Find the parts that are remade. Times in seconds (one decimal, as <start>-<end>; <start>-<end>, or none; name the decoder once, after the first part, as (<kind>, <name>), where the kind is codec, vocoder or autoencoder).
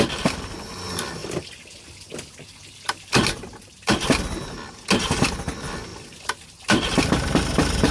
none